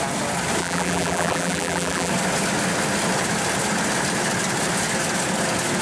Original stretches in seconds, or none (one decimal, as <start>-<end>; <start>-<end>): 0.0-0.6; 2.1-5.8